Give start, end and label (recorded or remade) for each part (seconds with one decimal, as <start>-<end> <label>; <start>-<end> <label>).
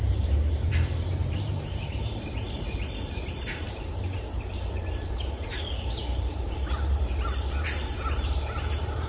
0.0-9.1 remade